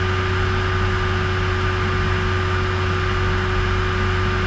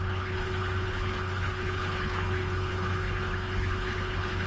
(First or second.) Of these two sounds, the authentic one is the first